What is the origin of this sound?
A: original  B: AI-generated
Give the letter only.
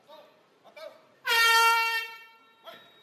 B